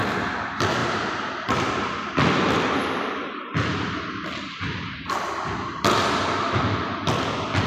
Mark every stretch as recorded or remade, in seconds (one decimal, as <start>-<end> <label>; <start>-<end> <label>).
0.0-0.8 recorded; 0.8-1.7 remade; 1.7-7.7 recorded